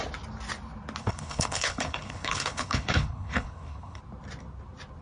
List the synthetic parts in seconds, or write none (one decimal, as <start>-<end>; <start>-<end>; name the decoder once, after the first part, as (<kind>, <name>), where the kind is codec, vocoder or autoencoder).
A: 1.0-4.0 (codec, HILCodec)